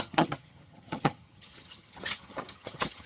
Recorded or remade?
remade